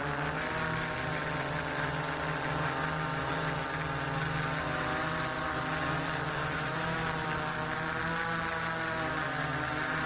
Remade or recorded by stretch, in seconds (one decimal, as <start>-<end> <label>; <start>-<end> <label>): 0.0-6.4 recorded; 6.4-7.0 remade; 7.0-10.1 recorded